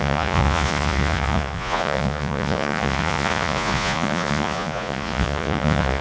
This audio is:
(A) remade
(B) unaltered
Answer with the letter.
A